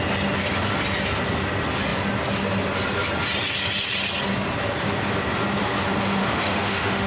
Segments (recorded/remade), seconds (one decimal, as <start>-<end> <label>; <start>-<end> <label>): 0.0-6.2 recorded; 6.2-7.1 remade